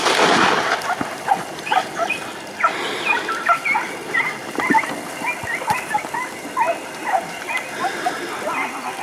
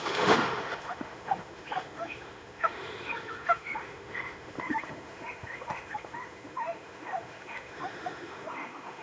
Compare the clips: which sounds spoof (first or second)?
second